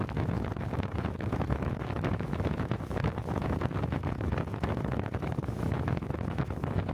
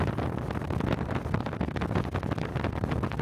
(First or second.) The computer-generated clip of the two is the first